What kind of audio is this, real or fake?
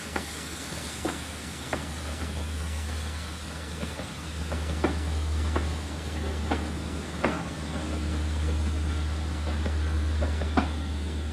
fake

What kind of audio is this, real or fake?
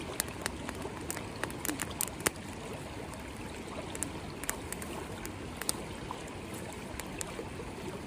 real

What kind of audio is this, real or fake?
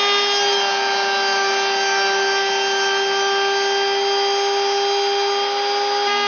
real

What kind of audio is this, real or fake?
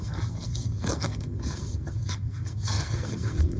fake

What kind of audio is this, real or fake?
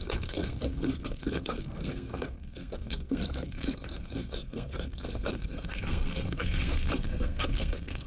fake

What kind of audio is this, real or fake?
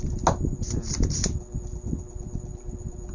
real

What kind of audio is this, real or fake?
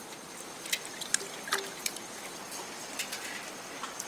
real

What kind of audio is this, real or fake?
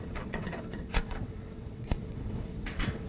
fake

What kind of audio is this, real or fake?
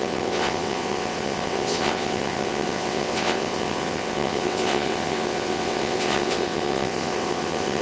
fake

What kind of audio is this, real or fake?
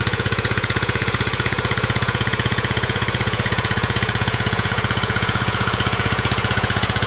fake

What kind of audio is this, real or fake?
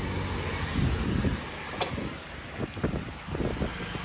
real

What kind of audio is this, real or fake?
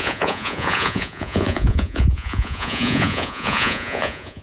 fake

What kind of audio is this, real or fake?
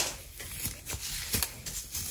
real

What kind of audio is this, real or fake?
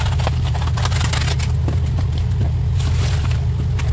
real